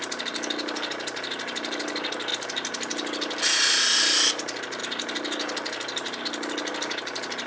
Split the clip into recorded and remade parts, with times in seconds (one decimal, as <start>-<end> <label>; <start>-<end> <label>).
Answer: 0.0-7.5 recorded